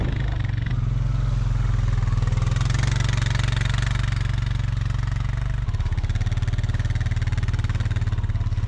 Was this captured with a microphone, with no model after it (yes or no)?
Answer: yes